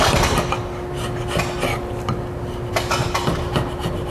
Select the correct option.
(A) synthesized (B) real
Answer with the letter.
B